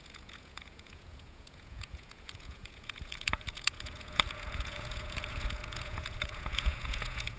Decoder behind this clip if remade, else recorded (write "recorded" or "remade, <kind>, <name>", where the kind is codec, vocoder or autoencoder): remade, vocoder, Vocos